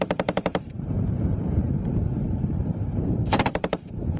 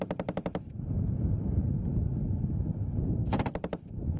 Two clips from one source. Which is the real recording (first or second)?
second